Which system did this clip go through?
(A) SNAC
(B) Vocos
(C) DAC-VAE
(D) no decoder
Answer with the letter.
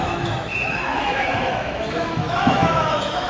C